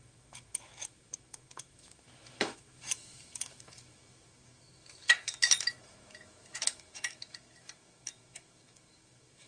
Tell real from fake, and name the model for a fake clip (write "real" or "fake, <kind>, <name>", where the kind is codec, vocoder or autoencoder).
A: fake, autoencoder, DAC-VAE